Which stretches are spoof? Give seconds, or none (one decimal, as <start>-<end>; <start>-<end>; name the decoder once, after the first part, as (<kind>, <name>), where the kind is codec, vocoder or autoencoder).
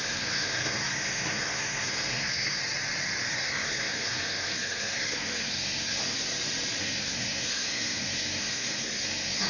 0.0-2.6 (codec, SNAC); 3.3-6.0; 6.8-9.5